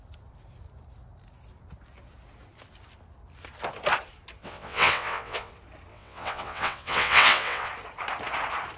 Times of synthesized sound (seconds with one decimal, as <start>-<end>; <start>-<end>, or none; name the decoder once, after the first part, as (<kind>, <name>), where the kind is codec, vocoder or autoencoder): 4.4-5.5 (vocoder, WaveNeXt); 5.9-7.7